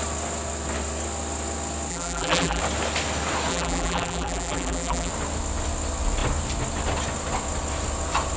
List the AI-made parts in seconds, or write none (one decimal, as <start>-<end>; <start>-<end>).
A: 1.9-2.6; 3.5-5.1